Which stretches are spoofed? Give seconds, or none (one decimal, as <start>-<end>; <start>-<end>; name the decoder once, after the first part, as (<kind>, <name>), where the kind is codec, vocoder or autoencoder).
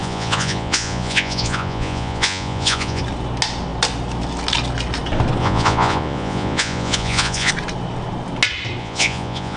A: 0.0-3.0 (vocoder, Vocos); 5.4-7.5; 8.8-9.6